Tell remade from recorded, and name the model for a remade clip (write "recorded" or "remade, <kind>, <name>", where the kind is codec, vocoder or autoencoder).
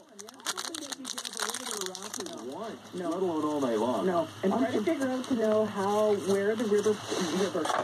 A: recorded